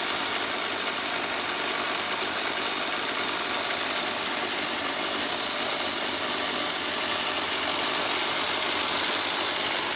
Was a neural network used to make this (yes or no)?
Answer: no